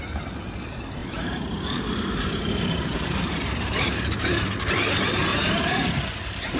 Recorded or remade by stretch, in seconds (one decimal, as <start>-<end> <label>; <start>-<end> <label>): 0.0-1.0 recorded; 1.0-4.5 remade; 4.5-5.3 recorded; 5.3-6.6 remade